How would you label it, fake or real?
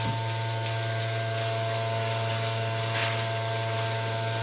real